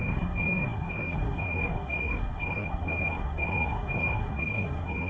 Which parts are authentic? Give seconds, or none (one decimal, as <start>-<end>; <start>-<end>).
none